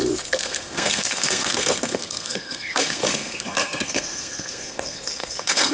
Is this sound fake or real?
fake